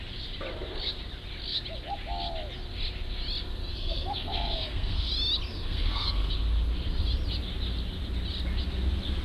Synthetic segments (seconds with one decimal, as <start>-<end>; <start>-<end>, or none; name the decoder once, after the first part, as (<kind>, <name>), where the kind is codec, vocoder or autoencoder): 3.7-5.1 (codec, SNAC); 5.5-6.3